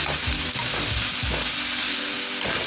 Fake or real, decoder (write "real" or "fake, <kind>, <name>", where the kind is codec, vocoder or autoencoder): real